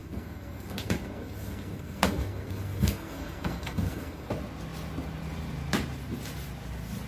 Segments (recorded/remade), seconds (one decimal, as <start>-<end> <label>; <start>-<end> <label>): 0.0-4.3 remade; 4.3-7.1 recorded